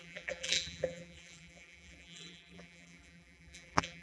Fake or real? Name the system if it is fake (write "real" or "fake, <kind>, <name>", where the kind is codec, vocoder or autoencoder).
fake, vocoder, BigVGAN v2